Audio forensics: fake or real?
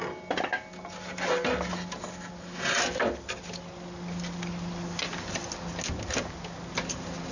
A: real